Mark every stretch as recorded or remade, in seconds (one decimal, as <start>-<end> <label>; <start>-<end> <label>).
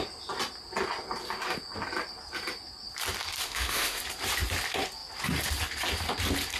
0.0-3.4 recorded; 3.4-4.0 remade; 4.0-6.6 recorded